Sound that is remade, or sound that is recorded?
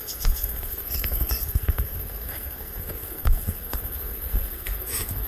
remade